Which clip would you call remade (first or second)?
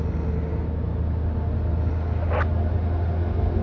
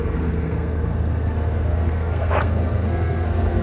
second